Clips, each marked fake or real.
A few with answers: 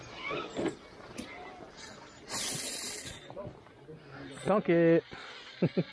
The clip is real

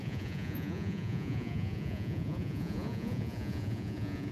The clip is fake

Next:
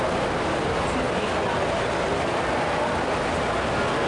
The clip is real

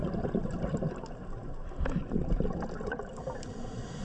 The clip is real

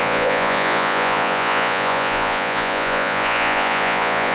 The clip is fake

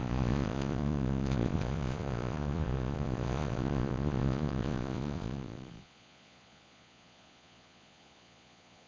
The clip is fake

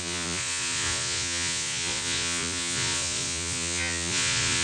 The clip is fake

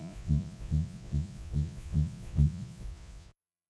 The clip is fake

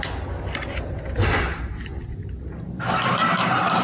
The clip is real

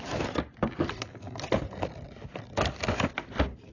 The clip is real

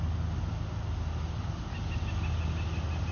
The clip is real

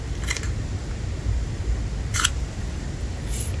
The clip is real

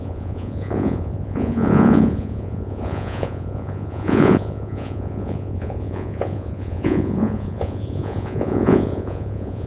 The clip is fake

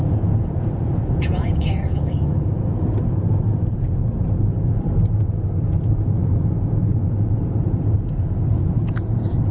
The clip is fake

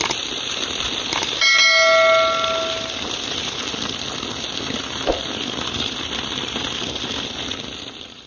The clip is real